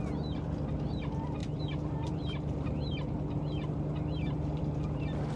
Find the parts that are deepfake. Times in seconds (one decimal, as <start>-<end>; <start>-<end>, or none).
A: 1.4-4.6